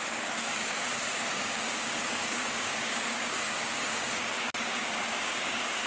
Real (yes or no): no